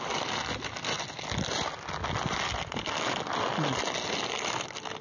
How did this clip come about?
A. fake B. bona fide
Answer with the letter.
B